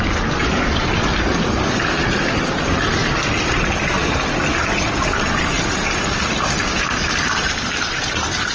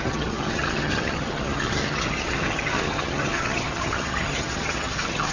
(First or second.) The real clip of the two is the first